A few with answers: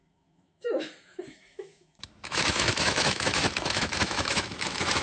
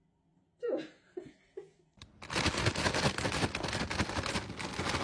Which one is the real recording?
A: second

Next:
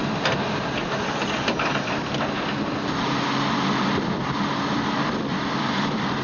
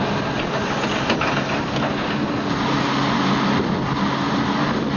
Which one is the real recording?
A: second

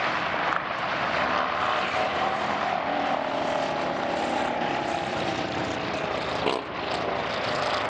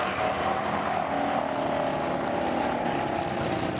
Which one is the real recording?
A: second